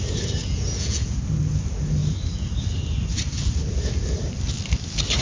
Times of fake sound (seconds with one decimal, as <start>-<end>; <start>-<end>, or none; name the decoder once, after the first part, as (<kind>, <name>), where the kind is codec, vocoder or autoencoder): 0.4-1.2 (vocoder, Vocos)